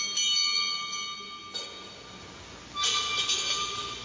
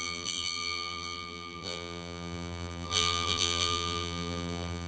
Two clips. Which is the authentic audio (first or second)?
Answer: first